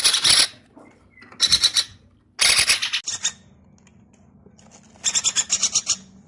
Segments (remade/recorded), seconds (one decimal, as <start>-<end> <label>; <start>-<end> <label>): 0.0-6.3 recorded